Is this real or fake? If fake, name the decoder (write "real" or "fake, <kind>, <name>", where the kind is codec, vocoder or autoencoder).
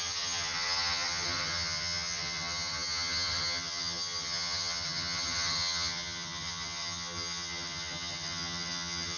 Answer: fake, vocoder, HiFi-GAN